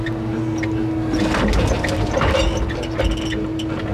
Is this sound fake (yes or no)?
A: no